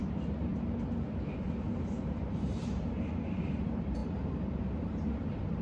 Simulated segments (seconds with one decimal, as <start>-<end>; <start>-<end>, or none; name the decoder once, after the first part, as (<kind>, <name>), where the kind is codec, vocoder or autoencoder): 0.0-0.5 (vocoder, BigVGAN v2); 1.3-5.6